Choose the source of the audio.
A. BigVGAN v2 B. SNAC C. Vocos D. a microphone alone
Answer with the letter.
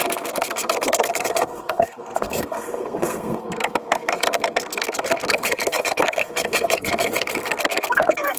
B